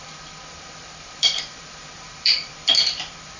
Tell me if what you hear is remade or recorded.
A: remade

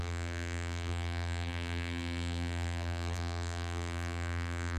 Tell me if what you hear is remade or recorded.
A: remade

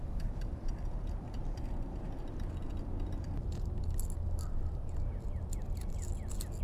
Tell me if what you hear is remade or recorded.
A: recorded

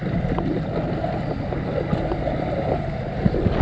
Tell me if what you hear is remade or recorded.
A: recorded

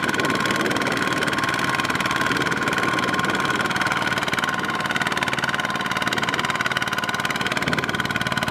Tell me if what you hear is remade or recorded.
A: remade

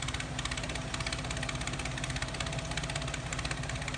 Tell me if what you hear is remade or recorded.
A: recorded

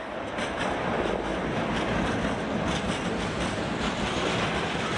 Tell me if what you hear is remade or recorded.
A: recorded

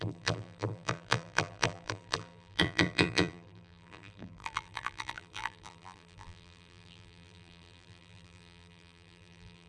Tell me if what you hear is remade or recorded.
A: remade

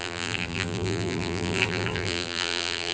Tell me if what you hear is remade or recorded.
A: remade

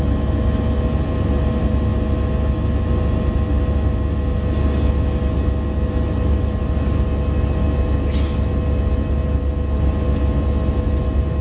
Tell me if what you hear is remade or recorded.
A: recorded